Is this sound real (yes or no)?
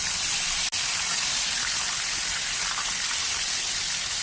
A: yes